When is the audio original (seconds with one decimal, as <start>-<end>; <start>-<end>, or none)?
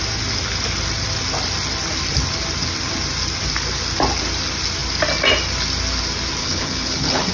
0.0-6.4